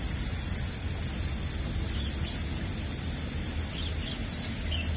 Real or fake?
real